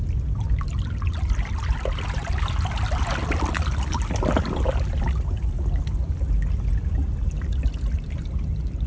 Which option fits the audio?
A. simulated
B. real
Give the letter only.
B